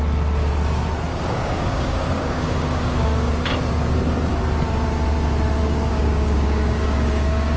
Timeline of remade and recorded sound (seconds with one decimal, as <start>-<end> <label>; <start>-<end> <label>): 0.0-1.1 recorded; 1.1-3.3 remade; 3.3-5.6 recorded; 5.6-7.6 remade